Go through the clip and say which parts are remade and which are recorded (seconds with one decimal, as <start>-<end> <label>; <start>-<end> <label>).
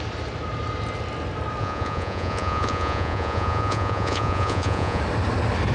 0.0-1.6 recorded; 1.6-5.0 remade; 5.0-5.7 recorded